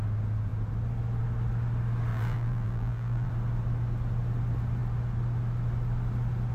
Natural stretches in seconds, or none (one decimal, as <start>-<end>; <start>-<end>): 0.0-2.1; 3.3-6.5